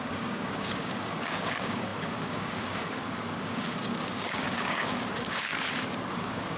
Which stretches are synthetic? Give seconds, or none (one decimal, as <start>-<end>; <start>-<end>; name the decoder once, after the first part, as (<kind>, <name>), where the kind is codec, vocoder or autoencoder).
0.0-5.5 (codec, DAC); 6.1-6.6